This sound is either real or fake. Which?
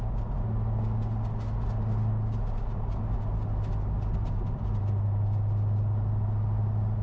real